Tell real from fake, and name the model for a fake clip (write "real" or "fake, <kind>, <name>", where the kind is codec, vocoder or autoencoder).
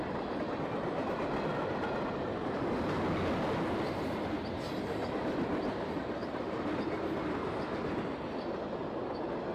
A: real